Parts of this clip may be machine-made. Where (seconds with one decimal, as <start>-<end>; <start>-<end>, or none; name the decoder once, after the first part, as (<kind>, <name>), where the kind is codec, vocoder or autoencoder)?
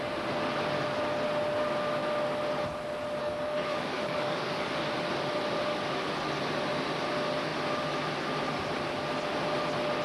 3.2-4.9 (codec, DAC)